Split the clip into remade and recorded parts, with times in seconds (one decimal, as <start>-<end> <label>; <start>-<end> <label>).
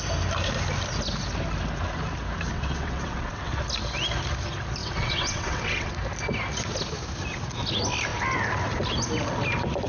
0.0-2.5 recorded; 2.5-3.6 remade; 3.6-4.8 recorded; 4.8-5.9 remade; 5.9-9.9 recorded